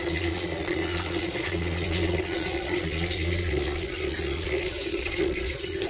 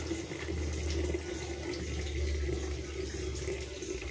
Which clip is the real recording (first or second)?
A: second